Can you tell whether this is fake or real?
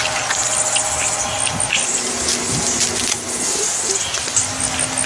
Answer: real